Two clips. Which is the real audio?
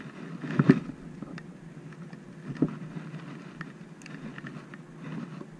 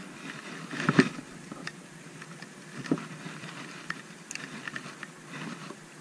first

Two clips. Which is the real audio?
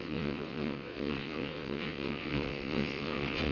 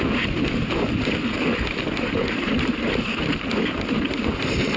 second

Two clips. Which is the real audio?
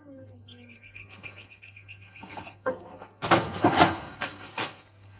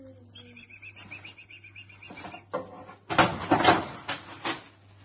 second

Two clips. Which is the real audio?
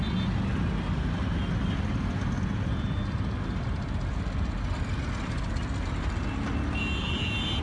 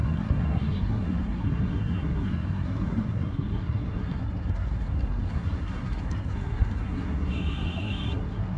first